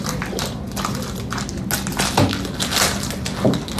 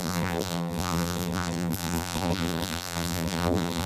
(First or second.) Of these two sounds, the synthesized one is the second